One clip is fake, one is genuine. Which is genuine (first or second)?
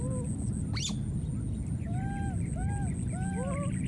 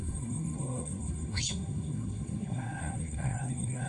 first